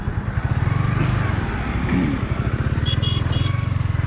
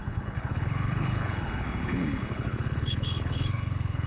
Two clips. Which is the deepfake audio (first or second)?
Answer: second